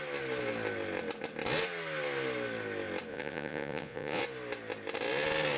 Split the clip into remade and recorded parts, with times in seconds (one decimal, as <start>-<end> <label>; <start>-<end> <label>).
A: 0.0-3.1 recorded; 3.1-4.2 remade; 4.2-5.6 recorded